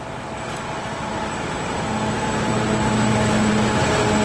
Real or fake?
real